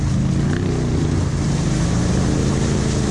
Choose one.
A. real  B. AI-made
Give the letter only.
A